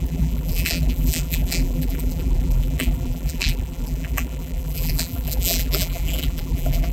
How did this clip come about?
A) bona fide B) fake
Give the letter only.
B